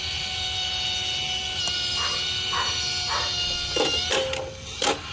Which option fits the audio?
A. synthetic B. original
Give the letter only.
B